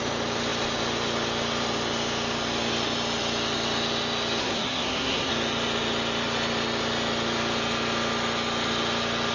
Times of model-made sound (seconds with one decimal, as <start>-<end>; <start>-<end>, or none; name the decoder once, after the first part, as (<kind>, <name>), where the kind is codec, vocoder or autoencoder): 4.4-5.3 (codec, SNAC)